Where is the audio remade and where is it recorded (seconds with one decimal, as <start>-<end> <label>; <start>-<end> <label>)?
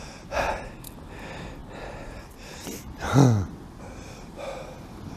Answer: 0.0-5.2 recorded